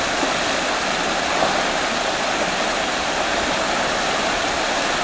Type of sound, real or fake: fake